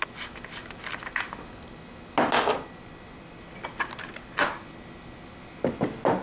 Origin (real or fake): real